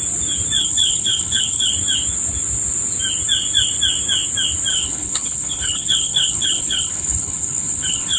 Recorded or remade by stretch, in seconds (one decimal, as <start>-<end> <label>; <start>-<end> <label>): 0.0-0.6 recorded; 0.6-1.7 remade; 1.7-4.7 recorded; 4.7-8.2 remade